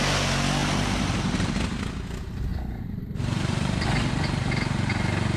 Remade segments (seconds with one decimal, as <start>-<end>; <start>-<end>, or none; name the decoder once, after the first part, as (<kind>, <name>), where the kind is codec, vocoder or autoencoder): 0.6-1.5 (vocoder, BigVGAN v2); 2.5-4.1